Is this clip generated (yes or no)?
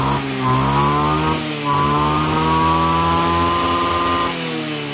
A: no